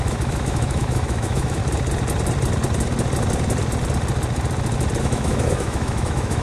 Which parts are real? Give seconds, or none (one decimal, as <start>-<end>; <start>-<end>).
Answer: 1.6-5.0